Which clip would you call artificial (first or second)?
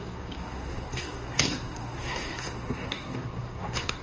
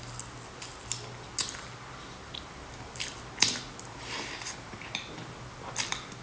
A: first